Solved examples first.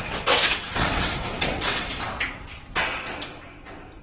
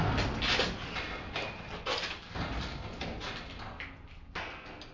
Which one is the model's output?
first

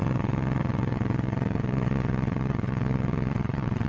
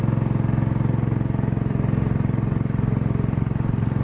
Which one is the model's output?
first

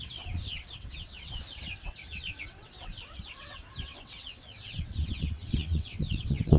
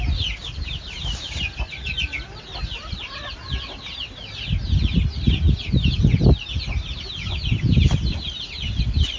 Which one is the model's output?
first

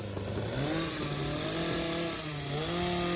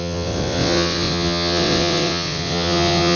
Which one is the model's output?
second